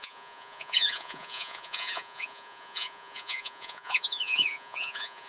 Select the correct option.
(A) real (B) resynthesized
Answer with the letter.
B